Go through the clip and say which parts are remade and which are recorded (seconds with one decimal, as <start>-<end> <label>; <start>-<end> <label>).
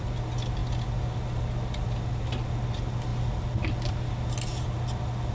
0.0-5.3 recorded